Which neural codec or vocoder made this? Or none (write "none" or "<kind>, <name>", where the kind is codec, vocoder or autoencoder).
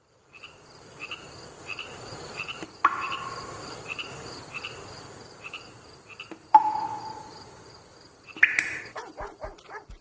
vocoder, BigVGAN v2